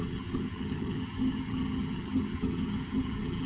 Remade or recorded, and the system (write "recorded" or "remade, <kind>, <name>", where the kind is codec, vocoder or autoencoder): remade, vocoder, HiFi-GAN